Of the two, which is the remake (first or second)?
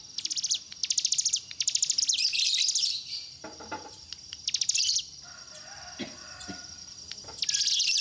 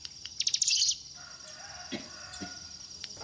first